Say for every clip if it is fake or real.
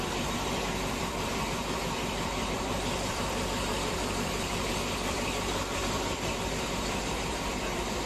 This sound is fake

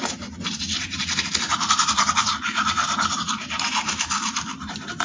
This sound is fake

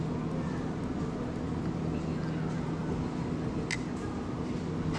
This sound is real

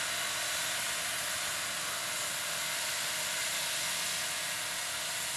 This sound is real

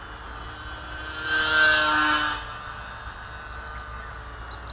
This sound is real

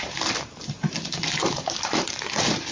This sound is fake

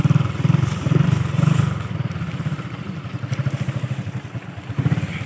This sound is fake